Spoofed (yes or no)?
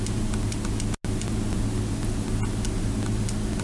no